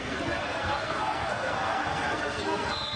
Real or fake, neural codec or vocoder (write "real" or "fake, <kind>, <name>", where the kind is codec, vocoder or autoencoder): fake, codec, SNAC